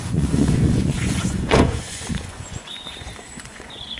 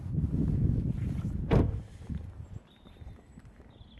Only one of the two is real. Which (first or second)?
second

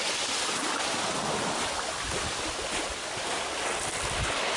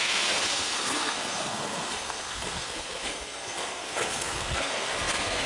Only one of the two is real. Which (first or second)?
first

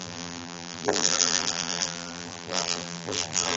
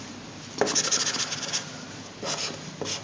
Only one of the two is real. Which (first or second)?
second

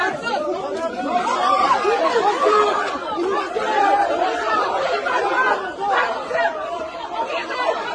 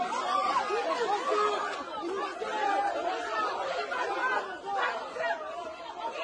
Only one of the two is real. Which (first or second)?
second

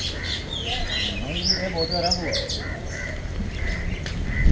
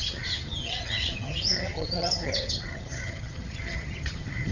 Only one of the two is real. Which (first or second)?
first